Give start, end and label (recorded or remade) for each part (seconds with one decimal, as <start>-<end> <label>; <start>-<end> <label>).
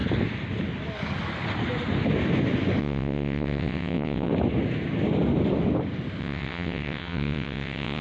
0.0-2.8 recorded; 2.8-4.3 remade; 4.3-6.2 recorded; 6.2-8.0 remade